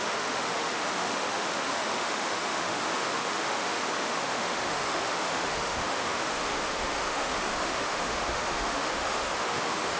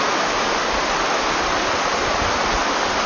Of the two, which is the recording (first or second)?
second